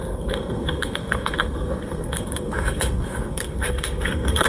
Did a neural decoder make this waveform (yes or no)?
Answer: yes